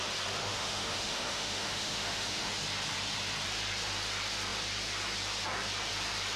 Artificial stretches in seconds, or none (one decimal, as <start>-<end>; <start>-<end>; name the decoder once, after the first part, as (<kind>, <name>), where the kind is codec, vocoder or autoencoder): 0.4-2.5 (autoencoder, DAC-VAE)